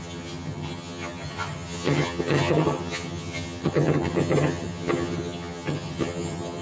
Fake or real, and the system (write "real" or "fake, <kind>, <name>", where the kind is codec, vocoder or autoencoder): fake, vocoder, HiFi-GAN